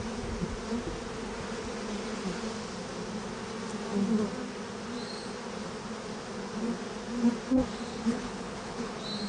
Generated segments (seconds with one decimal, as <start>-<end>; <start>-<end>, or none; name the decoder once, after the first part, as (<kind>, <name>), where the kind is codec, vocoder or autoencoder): 7.9-8.9 (codec, HILCodec)